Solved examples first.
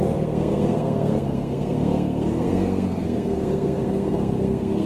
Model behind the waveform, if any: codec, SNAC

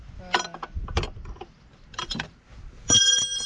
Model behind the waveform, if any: none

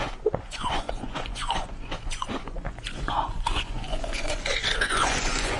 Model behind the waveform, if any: vocoder, Vocos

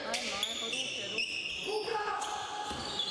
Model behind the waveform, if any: none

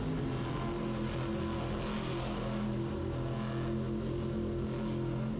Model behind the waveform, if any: none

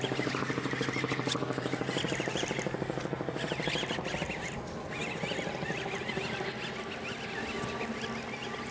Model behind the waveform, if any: none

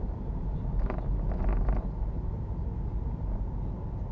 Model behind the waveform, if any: none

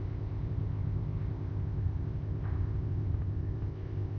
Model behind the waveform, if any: codec, ZipCodec